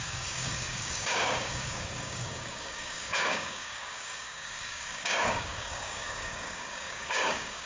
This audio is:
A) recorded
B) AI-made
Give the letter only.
B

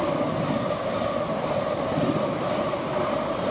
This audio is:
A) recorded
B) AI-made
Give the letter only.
A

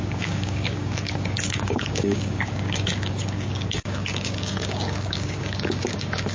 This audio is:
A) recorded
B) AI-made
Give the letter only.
B